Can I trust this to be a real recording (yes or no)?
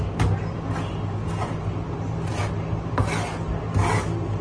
yes